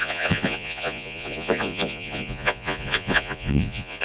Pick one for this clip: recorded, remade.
remade